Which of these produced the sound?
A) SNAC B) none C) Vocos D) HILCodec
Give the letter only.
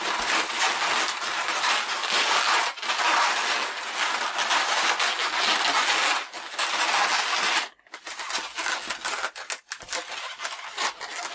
B